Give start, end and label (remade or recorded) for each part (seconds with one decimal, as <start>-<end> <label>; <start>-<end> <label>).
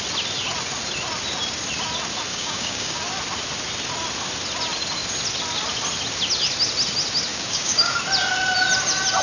0.0-2.3 recorded; 2.3-3.0 remade; 3.0-7.3 recorded; 7.3-8.0 remade; 8.0-9.2 recorded